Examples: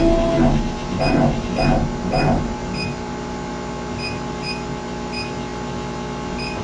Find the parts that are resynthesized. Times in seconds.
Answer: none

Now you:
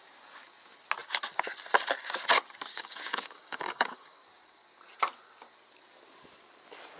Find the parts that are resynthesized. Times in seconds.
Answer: 2.7-4.2 (codec, DAC)

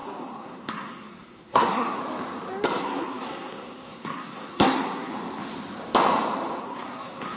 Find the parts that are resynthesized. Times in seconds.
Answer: 0.0-2.0 (codec, SNAC); 2.8-5.1; 6.6-7.4

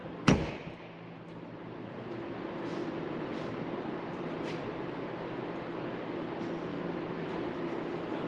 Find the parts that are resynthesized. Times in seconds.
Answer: 2.8-5.0 (vocoder, BigVGAN v2); 6.7-7.8